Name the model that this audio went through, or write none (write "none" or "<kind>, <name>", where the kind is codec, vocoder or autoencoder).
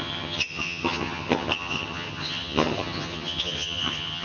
vocoder, HiFi-GAN